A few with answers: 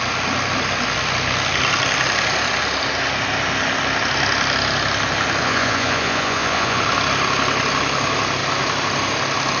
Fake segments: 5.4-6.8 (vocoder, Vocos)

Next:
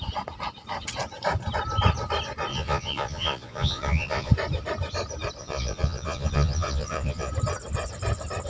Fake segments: 2.5-4.3 (vocoder, Vocos); 5.4-7.3

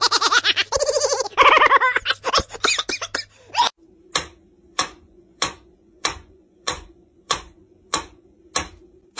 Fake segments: 4.7-8.4 (vocoder, Vocos)